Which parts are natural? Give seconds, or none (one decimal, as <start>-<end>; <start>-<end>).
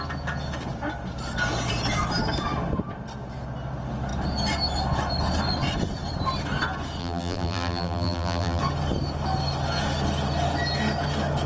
0.0-7.0; 8.6-11.5